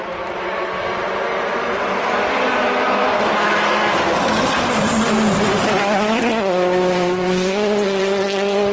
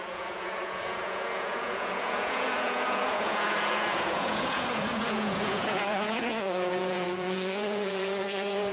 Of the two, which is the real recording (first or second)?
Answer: first